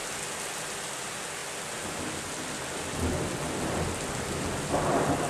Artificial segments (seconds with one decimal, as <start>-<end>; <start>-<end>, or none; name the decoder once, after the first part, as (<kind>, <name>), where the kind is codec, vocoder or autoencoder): none